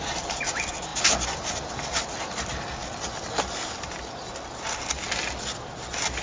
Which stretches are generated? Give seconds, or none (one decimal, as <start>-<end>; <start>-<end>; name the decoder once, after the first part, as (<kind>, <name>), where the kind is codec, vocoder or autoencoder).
none